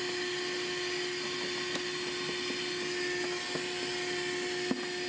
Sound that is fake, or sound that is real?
real